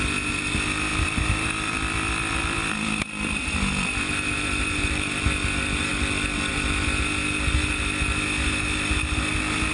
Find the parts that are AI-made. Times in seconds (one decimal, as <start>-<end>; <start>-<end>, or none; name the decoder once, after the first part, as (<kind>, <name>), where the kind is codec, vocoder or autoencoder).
0.9-5.2 (vocoder, BigVGAN v2)